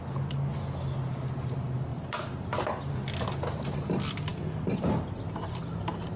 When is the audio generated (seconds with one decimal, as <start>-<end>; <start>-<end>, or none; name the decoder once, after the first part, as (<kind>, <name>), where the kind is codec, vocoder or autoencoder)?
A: 1.9-3.1 (vocoder, BigVGAN v2)